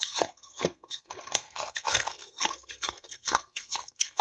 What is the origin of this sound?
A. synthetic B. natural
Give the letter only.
A